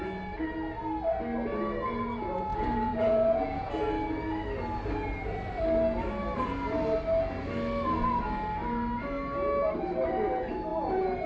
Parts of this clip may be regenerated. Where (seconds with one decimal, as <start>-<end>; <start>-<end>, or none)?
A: 2.5-3.7; 10.7-11.3